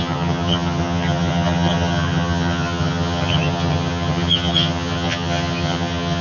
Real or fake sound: fake